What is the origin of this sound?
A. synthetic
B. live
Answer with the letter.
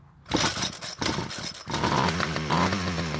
B